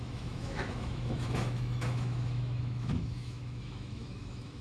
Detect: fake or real fake